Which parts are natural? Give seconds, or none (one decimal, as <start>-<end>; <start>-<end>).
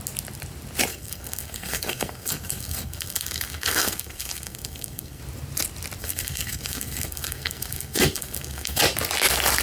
0.0-0.9; 5.2-6.0; 8.8-9.6